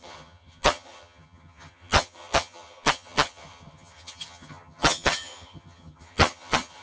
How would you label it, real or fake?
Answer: fake